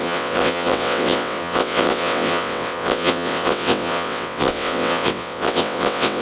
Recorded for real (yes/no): no